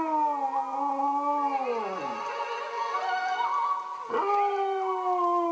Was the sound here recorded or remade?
recorded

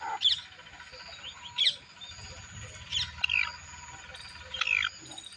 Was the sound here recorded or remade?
recorded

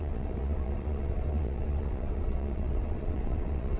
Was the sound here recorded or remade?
remade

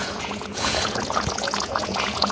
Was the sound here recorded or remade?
remade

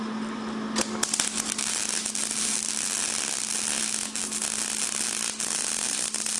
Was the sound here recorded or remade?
recorded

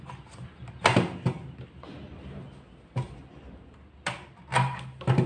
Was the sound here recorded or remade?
recorded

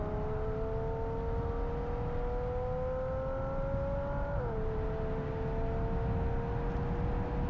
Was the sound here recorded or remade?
recorded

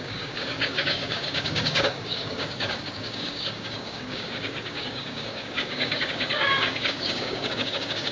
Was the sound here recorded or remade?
remade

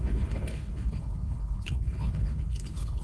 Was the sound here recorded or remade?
remade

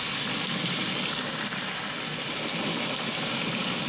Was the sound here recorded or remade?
recorded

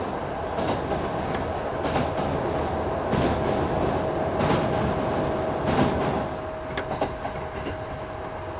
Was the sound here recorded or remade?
recorded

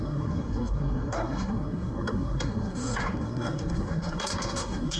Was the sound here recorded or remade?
remade